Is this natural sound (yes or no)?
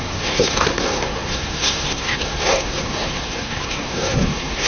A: no